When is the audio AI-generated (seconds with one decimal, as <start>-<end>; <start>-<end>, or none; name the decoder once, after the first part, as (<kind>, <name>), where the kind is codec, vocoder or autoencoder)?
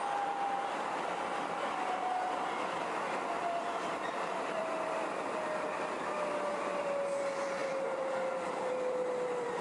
0.0-9.6 (vocoder, BigVGAN v2)